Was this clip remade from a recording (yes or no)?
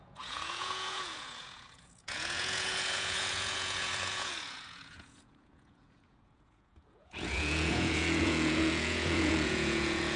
yes